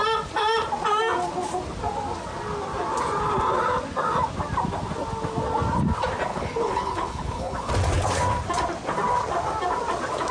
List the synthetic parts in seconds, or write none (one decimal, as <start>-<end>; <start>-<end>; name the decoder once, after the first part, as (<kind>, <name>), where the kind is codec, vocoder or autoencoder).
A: 6.3-7.7 (codec, HILCodec)